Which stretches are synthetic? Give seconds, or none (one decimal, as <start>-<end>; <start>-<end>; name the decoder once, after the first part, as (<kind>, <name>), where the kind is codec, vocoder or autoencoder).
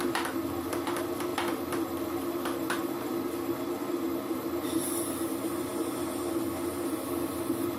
none